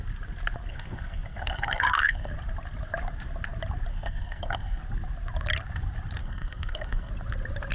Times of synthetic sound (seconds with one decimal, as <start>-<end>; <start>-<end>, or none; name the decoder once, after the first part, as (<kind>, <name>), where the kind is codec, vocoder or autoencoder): 0.7-2.3 (codec, SNAC); 3.9-4.8; 6.2-7.1